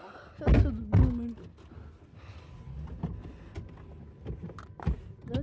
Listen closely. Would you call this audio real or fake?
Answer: real